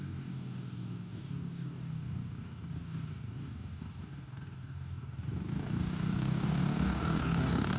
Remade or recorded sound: remade